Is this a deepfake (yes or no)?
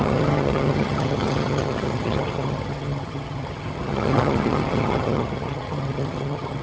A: yes